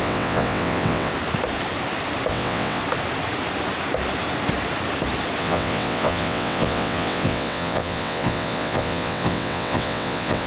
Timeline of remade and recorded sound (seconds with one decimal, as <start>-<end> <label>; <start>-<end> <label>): 0.0-1.1 remade; 1.1-2.3 recorded; 2.3-2.8 remade; 2.8-5.4 recorded; 5.4-10.5 remade